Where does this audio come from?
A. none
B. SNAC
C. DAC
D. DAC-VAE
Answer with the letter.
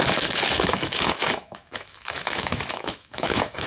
D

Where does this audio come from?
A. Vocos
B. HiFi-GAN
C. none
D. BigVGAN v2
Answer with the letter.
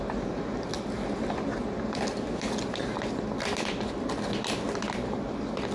C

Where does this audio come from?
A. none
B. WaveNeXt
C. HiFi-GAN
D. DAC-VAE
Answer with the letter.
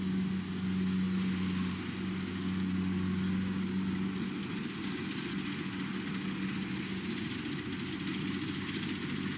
A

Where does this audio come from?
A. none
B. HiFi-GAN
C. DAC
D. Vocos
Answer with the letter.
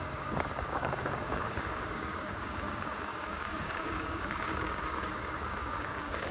C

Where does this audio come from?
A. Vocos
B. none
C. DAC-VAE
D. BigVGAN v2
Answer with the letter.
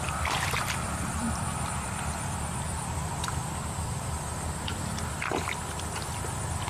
D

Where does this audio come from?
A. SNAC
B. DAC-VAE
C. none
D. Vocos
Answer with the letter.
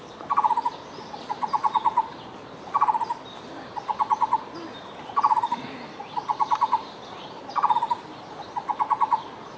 C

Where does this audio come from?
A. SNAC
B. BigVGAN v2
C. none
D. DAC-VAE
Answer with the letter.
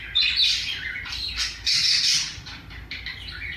C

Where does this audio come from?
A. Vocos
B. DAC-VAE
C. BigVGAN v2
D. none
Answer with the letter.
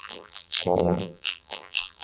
C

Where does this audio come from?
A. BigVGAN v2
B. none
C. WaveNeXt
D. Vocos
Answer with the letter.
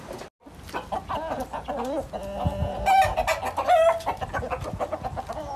B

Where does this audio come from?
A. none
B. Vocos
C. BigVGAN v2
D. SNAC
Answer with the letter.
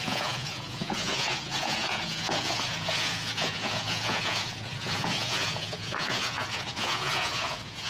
B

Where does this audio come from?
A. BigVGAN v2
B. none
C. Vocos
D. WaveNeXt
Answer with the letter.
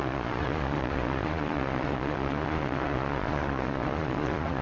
C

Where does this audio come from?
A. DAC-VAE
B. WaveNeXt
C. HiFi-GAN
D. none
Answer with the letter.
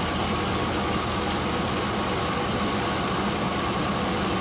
D